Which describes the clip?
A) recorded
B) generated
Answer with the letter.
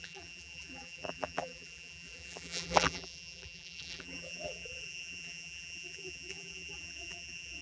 B